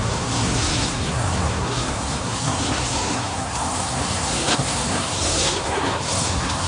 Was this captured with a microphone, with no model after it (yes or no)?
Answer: no